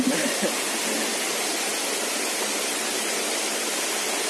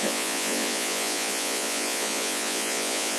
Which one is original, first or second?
first